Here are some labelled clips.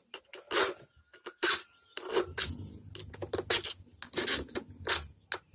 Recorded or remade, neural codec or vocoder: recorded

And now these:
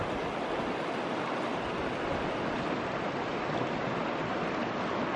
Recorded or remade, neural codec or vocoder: recorded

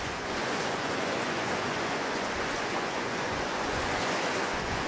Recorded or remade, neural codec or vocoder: remade, vocoder, Vocos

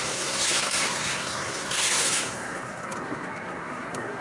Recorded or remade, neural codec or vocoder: remade, codec, SNAC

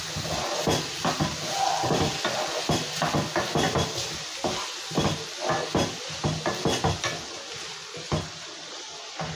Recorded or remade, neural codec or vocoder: recorded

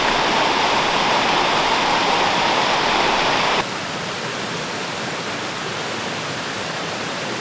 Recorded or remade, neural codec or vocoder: remade, vocoder, BigVGAN v2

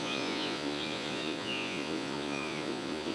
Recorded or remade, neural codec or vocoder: remade, vocoder, Vocos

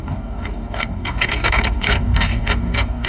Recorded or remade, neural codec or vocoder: remade, codec, DAC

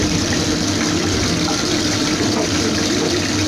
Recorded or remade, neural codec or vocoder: recorded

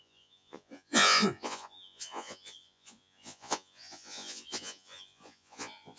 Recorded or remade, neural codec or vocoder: remade, vocoder, Vocos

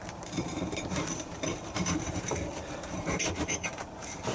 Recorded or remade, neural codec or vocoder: remade, vocoder, BigVGAN v2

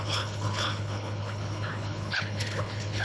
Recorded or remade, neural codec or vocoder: remade, codec, HILCodec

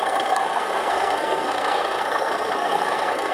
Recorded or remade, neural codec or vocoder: remade, codec, SNAC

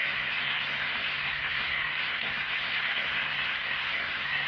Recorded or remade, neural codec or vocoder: remade, codec, SNAC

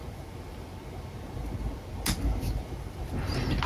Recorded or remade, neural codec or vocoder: recorded